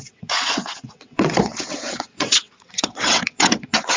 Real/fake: fake